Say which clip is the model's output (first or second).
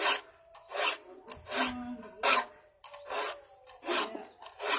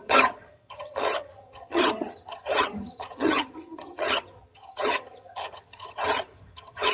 second